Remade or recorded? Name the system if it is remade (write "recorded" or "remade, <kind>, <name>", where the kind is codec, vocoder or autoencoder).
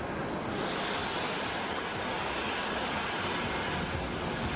recorded